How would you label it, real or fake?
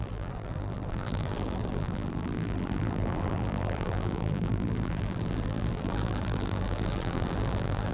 fake